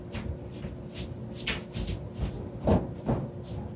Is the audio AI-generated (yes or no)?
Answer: no